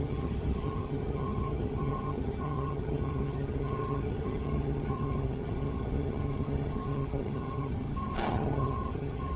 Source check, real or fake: fake